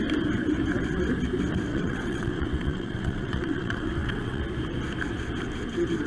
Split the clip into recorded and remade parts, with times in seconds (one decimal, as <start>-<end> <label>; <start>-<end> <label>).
0.0-1.7 recorded; 1.7-4.4 remade; 4.4-6.1 recorded